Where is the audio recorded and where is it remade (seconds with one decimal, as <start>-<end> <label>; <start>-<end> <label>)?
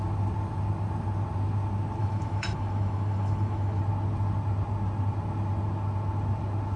0.0-2.0 recorded; 2.0-3.8 remade; 3.8-6.8 recorded